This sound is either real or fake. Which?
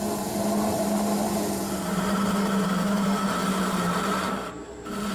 fake